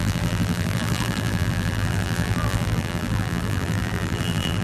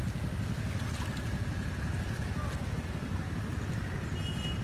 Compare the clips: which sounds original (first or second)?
second